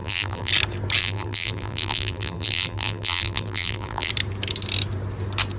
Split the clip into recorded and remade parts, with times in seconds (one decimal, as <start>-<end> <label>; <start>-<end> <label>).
0.0-0.5 remade; 0.5-1.0 recorded; 1.0-4.1 remade; 4.1-5.6 recorded